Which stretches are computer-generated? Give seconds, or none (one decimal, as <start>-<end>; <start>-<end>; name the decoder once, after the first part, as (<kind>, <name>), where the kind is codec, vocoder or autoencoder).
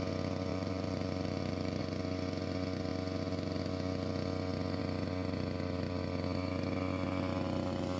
0.5-1.8 (vocoder, BigVGAN v2)